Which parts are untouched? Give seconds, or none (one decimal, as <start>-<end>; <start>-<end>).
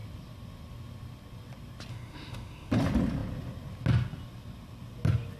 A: 0.0-1.9; 2.7-5.4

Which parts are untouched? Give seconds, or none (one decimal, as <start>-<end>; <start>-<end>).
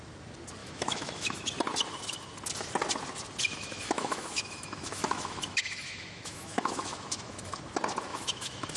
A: 0.0-0.6; 1.5-3.5; 7.6-8.1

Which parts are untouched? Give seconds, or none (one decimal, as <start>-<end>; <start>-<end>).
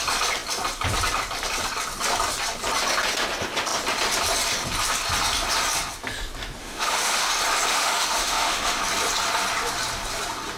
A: 0.0-6.6; 7.3-7.7; 8.8-10.6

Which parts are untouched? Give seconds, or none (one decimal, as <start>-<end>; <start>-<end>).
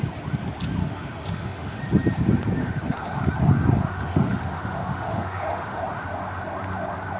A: 0.0-0.8; 1.8-2.6; 3.4-3.9; 5.8-7.2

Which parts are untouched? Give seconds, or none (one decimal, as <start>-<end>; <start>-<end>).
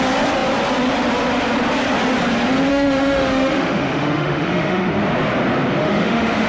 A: 0.0-2.7; 4.9-5.8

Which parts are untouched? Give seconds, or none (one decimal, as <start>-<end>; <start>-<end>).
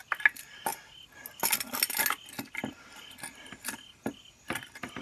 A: 0.0-5.0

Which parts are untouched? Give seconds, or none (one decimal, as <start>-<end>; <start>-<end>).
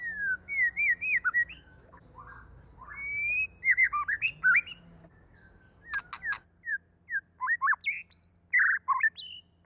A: 0.0-1.1; 2.0-9.7